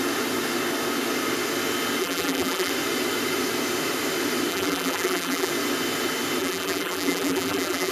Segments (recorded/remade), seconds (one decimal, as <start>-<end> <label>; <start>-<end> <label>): 0.0-2.0 recorded; 2.0-2.7 remade; 2.7-4.5 recorded; 4.5-5.5 remade; 5.5-6.4 recorded; 6.4-7.9 remade